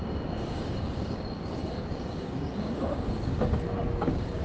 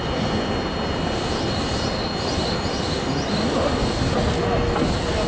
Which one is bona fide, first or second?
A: second